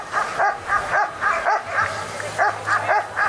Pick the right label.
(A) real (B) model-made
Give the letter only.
A